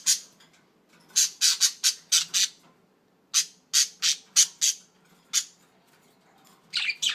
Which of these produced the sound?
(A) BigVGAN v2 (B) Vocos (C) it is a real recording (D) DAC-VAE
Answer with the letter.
C